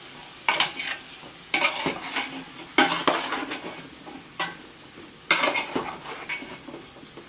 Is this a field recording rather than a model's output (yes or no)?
yes